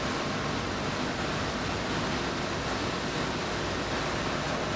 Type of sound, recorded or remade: recorded